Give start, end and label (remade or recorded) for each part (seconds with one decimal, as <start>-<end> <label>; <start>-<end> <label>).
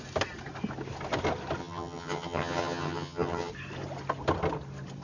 0.0-1.6 recorded; 1.6-3.5 remade; 3.5-5.0 recorded